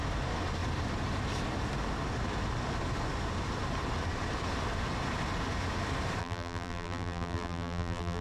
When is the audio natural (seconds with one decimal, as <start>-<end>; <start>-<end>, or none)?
0.0-6.2